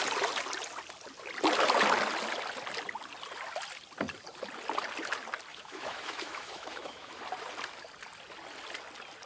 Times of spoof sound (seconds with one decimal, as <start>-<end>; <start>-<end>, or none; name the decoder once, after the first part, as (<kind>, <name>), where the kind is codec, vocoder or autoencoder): 5.5-7.2 (autoencoder, DAC-VAE)